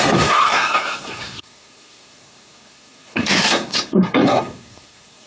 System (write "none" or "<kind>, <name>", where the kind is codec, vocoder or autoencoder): codec, SNAC